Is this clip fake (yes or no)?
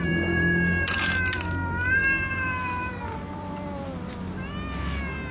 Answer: no